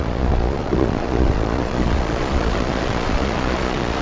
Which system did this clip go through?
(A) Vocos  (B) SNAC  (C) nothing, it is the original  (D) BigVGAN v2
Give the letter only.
A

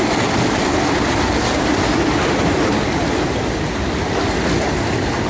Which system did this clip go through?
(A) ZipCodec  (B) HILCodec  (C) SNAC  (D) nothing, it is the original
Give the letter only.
D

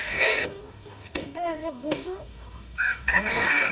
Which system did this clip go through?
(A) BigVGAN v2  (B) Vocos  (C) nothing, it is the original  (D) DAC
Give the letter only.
D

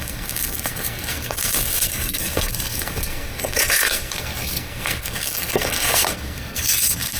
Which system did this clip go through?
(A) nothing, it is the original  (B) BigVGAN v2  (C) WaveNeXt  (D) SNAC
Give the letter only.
D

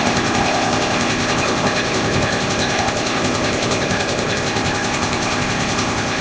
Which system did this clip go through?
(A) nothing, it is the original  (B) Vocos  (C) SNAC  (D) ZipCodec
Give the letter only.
D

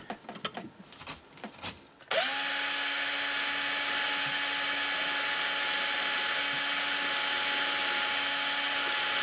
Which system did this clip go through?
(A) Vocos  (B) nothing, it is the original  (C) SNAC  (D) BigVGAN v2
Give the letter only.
B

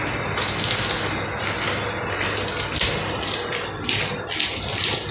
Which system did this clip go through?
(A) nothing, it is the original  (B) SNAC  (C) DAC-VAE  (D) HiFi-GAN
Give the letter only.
A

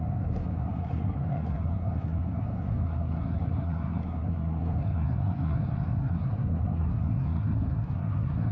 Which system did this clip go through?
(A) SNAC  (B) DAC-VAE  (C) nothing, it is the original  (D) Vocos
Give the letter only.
A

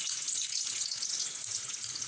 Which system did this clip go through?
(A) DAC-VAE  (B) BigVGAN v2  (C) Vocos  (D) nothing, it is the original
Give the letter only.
C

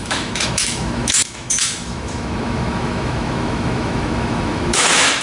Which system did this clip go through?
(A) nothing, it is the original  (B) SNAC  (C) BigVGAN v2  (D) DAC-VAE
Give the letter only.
D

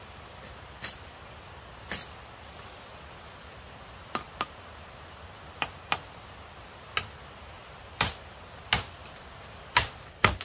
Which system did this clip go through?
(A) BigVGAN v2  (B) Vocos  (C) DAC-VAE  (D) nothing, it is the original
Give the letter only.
D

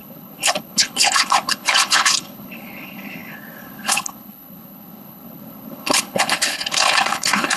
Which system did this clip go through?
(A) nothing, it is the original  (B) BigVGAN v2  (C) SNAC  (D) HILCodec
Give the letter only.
D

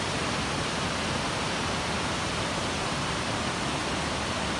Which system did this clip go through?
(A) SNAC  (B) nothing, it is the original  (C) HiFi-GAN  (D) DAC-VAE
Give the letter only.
B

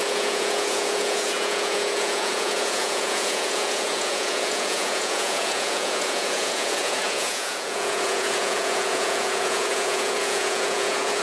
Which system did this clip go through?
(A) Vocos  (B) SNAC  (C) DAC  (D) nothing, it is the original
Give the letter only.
A